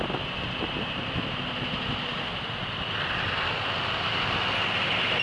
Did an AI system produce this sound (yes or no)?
no